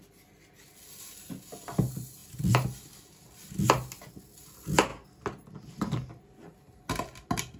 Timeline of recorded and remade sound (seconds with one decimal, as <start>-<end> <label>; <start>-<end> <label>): 0.0-7.6 recorded